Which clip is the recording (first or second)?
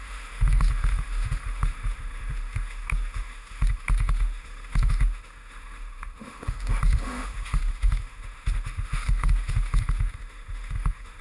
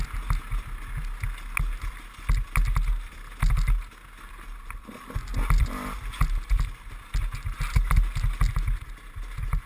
second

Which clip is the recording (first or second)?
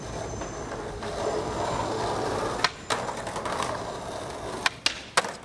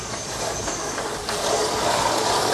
first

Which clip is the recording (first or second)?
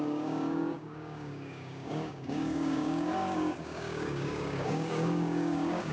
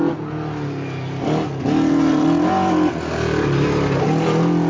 second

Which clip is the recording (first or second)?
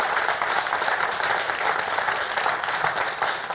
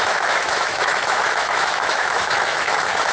first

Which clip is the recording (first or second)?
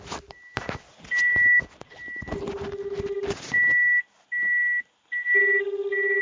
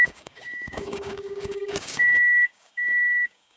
first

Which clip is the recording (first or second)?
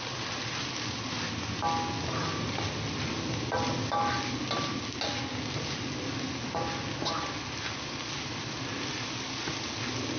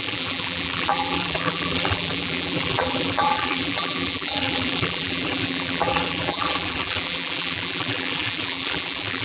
first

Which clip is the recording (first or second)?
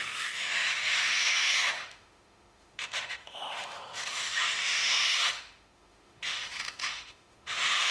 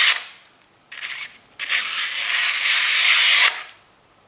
second